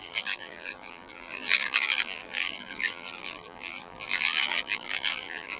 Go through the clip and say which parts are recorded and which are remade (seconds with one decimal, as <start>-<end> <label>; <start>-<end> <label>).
0.0-5.6 remade